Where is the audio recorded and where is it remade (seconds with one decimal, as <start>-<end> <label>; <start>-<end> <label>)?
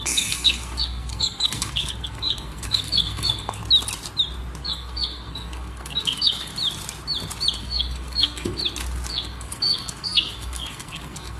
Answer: 0.0-3.6 remade; 3.6-4.6 recorded; 4.6-6.5 remade; 6.5-7.6 recorded; 7.6-8.6 remade; 8.6-9.1 recorded; 9.1-11.4 remade